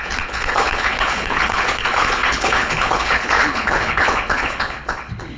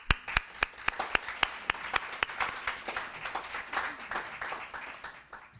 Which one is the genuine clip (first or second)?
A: second